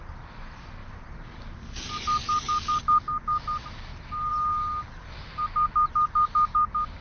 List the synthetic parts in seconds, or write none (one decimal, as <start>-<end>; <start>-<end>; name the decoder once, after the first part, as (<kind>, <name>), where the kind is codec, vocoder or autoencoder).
0.8-1.6 (vocoder, BigVGAN v2)